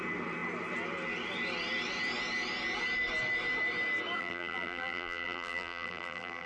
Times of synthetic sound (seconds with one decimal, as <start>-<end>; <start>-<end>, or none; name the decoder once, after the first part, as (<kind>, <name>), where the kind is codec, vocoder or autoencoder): 4.2-6.5 (vocoder, BigVGAN v2)